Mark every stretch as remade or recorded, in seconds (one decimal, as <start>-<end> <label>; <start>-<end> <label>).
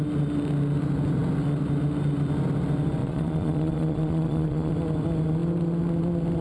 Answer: 0.0-3.0 recorded; 3.0-4.7 remade; 4.7-6.4 recorded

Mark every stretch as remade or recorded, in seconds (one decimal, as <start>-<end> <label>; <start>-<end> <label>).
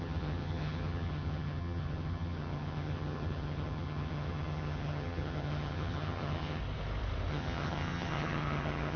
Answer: 0.0-6.6 remade; 6.6-7.3 recorded; 7.3-9.0 remade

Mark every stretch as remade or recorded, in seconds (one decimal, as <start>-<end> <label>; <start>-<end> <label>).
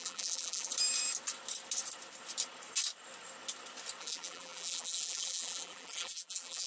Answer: 0.0-0.7 remade; 0.7-4.0 recorded; 4.0-6.7 remade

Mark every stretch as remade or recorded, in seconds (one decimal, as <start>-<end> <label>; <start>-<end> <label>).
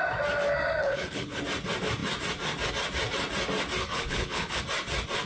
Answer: 0.0-0.8 recorded; 0.8-1.4 remade; 1.4-3.8 recorded; 3.8-4.6 remade; 4.6-5.3 recorded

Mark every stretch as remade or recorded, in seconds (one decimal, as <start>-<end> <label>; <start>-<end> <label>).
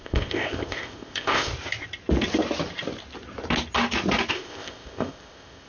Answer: 0.0-1.5 remade; 1.5-4.3 recorded; 4.3-5.7 remade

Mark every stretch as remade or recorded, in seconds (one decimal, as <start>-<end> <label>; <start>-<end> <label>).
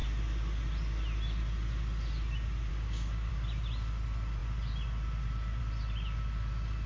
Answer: 0.0-2.7 recorded; 2.7-3.3 remade; 3.3-6.9 recorded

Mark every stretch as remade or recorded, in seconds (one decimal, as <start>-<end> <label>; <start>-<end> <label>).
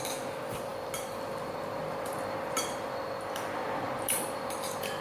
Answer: 0.0-5.0 recorded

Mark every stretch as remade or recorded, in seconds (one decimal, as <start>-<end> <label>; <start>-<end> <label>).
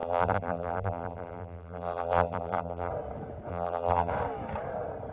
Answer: 0.0-2.9 remade; 2.9-3.5 recorded; 3.5-4.1 remade; 4.1-5.1 recorded